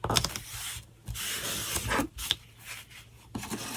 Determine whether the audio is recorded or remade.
recorded